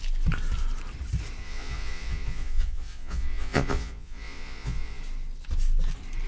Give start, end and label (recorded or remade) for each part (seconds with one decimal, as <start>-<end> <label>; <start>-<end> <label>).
0.0-1.4 recorded; 1.4-5.0 remade; 5.0-6.3 recorded